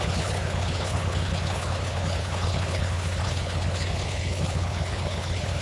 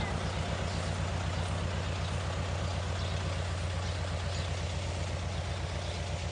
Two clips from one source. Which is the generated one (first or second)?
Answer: first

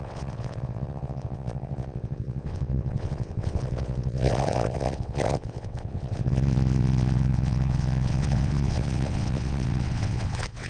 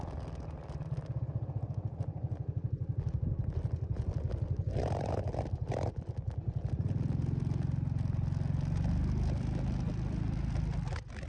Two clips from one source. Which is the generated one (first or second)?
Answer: first